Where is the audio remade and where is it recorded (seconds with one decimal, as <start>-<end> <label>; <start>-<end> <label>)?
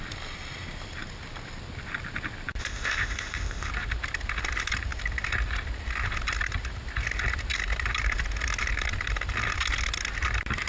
0.0-2.6 recorded; 2.6-3.7 remade; 3.7-10.7 recorded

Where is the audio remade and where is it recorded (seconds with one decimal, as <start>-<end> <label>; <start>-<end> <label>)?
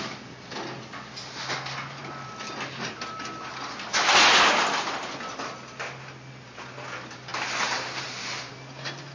0.0-9.1 recorded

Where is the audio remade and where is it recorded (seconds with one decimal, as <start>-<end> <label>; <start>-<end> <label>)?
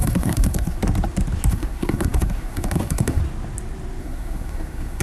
0.0-0.8 remade; 0.8-1.5 recorded; 1.5-3.2 remade; 3.2-4.0 recorded; 4.0-5.0 remade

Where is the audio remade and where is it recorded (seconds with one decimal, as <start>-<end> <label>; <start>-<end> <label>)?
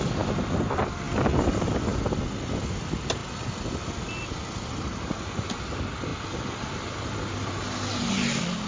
0.0-8.7 recorded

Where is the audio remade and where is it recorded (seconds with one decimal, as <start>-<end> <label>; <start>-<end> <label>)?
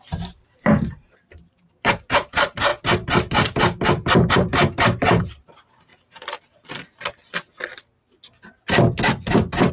0.0-2.7 remade; 2.7-4.3 recorded; 4.3-5.9 remade; 5.9-9.7 recorded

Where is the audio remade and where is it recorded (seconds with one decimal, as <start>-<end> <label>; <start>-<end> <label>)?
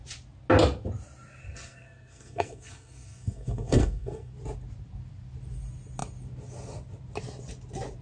0.0-1.4 recorded; 1.4-4.3 remade; 4.3-8.0 recorded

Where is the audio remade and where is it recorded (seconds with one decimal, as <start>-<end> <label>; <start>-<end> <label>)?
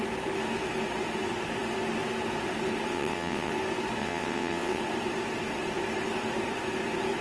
0.0-2.9 recorded; 2.9-3.5 remade; 3.5-4.0 recorded; 4.0-4.8 remade; 4.8-7.2 recorded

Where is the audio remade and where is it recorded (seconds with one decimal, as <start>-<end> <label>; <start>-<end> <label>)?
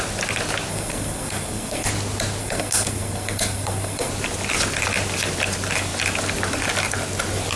0.0-0.7 recorded; 0.7-1.9 remade; 1.9-2.4 recorded; 2.4-4.1 remade; 4.1-7.6 recorded